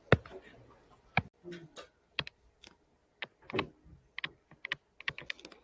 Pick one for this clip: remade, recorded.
recorded